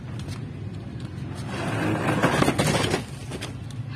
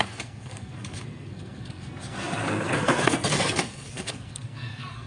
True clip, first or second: first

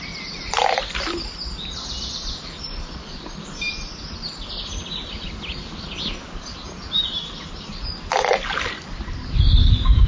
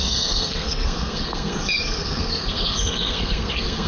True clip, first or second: first